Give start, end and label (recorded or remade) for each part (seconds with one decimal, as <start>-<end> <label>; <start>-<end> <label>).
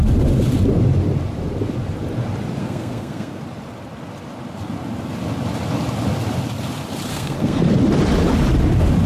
0.0-2.6 recorded; 2.6-3.4 remade; 3.4-7.1 recorded; 7.1-7.6 remade; 7.6-9.1 recorded